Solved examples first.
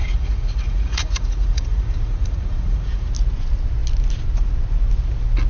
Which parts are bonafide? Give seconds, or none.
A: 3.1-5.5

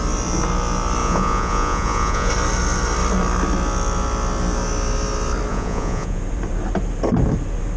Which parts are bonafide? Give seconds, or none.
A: 0.0-1.0; 2.3-5.5; 6.2-7.8

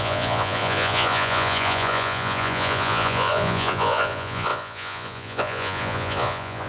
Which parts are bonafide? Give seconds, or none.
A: none

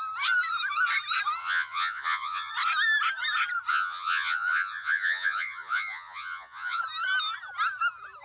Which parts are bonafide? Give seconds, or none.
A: 0.0-1.4; 2.5-3.7; 6.8-8.2

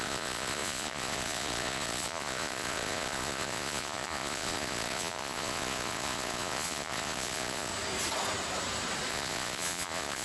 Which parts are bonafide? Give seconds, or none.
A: 7.7-9.1

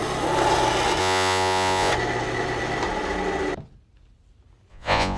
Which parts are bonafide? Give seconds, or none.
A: 0.0-1.0; 1.9-4.7